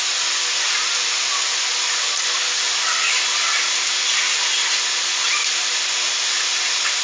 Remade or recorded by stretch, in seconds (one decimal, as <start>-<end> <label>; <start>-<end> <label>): 0.0-7.0 recorded